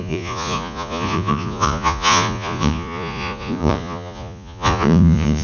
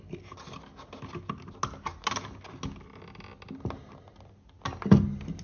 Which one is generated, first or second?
first